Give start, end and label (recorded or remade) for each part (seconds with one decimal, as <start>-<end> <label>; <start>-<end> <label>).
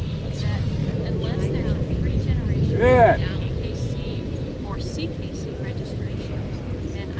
0.0-7.2 recorded